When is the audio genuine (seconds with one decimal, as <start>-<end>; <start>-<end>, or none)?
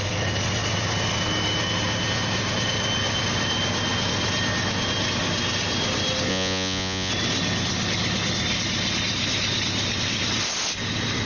0.0-6.3; 7.1-11.3